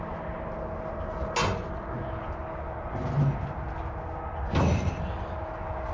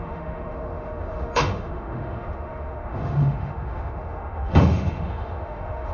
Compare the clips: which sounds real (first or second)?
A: first